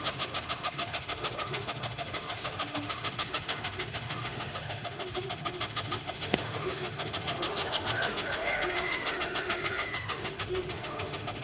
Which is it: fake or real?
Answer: fake